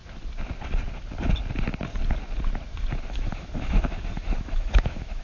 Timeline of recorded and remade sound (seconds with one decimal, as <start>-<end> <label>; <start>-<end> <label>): 0.0-3.1 recorded; 3.1-5.2 remade